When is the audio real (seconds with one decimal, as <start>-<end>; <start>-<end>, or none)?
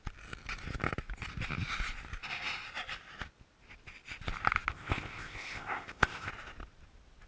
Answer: 0.0-4.7; 6.3-7.3